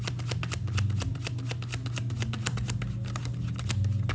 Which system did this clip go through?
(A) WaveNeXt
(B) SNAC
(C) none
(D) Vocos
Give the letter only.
C